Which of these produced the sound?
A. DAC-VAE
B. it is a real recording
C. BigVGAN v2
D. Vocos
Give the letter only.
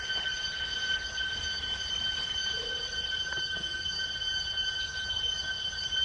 B